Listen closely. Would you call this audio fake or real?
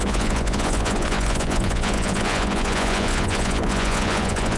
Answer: fake